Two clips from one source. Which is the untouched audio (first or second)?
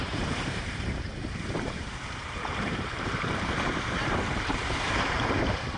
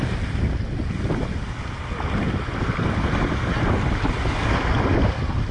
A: second